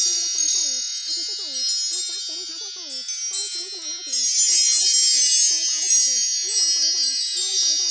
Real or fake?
real